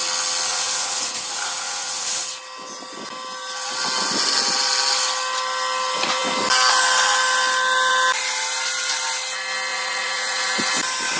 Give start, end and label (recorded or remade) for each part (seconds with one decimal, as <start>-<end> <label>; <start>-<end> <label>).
0.0-0.5 recorded; 0.5-2.2 remade; 2.2-9.7 recorded; 9.7-10.7 remade; 10.7-11.2 recorded